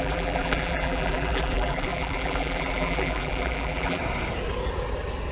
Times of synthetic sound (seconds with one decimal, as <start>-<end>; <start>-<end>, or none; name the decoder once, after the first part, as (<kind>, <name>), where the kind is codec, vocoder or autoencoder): 0.0-4.0 (vocoder, BigVGAN v2)